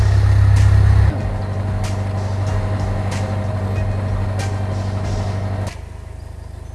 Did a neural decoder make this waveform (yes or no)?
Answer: no